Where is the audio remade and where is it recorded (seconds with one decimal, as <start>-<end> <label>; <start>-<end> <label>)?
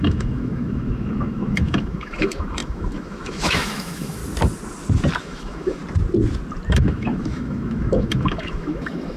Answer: 0.0-4.2 remade; 4.2-5.2 recorded; 5.2-5.8 remade; 5.8-6.7 recorded; 6.7-9.2 remade